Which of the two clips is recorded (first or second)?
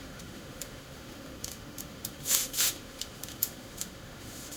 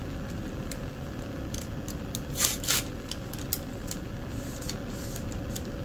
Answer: second